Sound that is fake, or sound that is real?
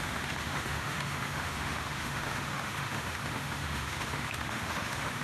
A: fake